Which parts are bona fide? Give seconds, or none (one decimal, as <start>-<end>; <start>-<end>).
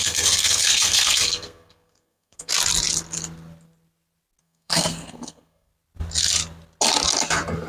2.5-4.4; 5.7-7.7